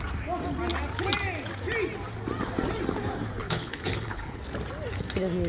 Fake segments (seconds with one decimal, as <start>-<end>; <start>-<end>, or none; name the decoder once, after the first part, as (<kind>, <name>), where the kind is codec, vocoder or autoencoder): 3.4-4.4 (codec, HILCodec)